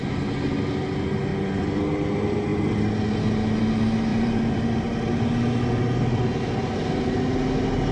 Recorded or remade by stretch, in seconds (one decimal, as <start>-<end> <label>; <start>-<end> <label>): 0.0-1.3 recorded; 1.3-1.8 remade; 1.8-4.1 recorded; 4.1-4.8 remade; 4.8-7.9 recorded